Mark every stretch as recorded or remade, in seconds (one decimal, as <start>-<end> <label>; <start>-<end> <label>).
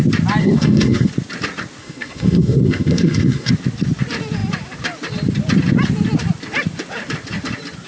0.0-0.4 recorded; 0.4-1.1 remade; 1.1-1.8 recorded; 1.8-3.5 remade; 3.5-7.9 recorded